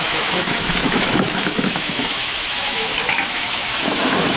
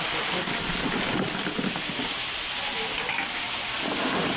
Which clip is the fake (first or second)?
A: first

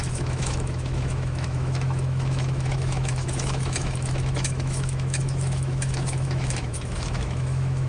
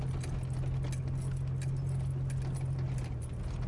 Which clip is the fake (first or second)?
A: first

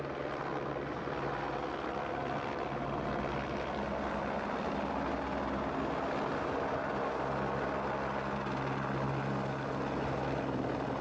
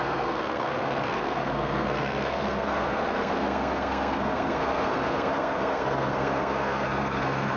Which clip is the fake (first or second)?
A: second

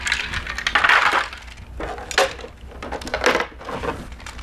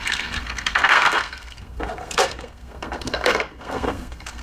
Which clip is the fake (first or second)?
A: second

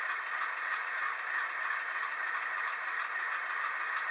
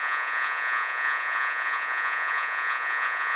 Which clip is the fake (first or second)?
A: second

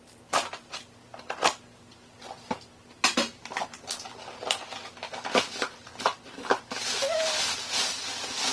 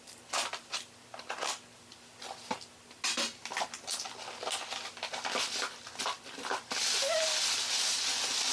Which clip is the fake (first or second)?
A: first